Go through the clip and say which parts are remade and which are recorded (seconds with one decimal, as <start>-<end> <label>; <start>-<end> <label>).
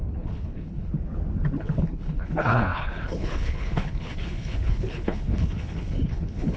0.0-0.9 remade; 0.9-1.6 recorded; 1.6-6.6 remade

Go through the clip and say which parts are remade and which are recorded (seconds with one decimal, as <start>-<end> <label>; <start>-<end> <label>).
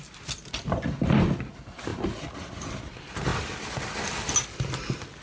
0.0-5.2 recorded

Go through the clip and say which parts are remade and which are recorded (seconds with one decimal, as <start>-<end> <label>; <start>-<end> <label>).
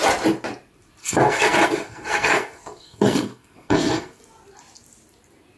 0.0-1.0 recorded; 1.0-4.2 remade; 4.2-5.6 recorded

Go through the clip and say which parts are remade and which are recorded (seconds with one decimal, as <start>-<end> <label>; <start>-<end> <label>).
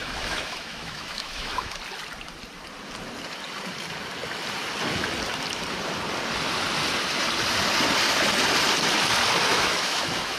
0.0-1.8 remade; 1.8-9.5 recorded; 9.5-10.4 remade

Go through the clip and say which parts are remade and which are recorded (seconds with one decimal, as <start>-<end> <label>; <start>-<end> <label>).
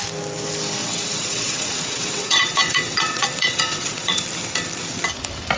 0.0-0.8 recorded; 0.8-4.2 remade; 4.2-5.6 recorded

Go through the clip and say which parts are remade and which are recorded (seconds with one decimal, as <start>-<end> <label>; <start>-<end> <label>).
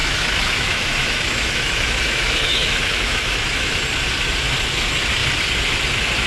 0.0-3.7 remade; 3.7-6.3 recorded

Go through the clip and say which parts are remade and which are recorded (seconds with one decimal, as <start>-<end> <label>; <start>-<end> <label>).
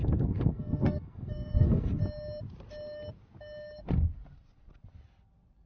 0.0-2.0 remade; 2.0-5.7 recorded